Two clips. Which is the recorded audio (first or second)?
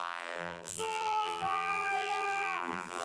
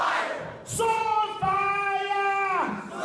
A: second